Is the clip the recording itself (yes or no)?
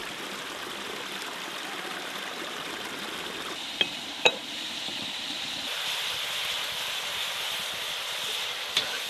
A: no